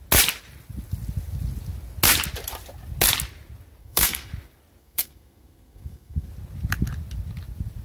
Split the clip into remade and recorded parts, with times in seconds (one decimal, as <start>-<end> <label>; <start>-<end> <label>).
0.0-3.8 recorded; 3.8-4.3 remade; 4.3-4.8 recorded; 4.8-6.3 remade; 6.3-7.8 recorded